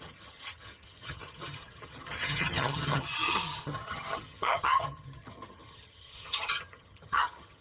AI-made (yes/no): yes